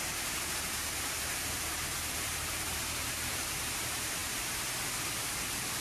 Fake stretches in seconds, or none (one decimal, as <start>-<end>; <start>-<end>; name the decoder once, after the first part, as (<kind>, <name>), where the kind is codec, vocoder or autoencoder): 0.0-4.2 (vocoder, BigVGAN v2)